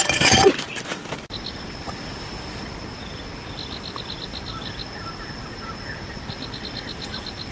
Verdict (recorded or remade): recorded